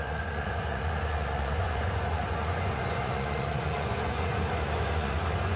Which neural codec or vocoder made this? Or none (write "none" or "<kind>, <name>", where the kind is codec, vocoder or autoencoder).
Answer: vocoder, Vocos